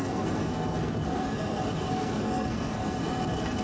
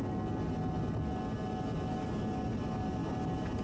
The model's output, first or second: first